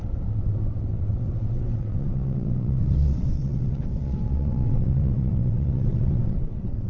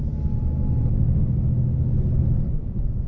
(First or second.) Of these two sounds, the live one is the second